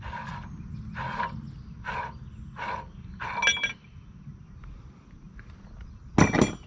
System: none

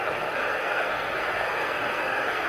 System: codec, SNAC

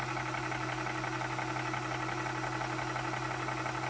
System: none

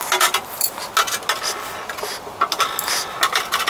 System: none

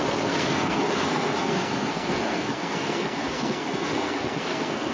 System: codec, SNAC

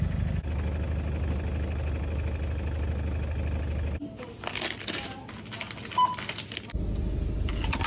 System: none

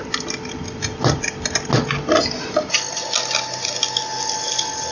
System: none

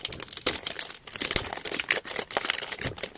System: none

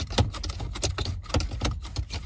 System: none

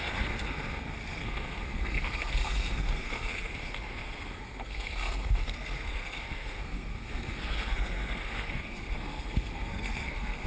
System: codec, SNAC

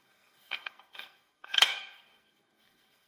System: codec, SNAC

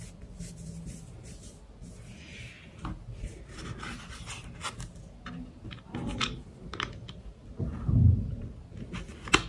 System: none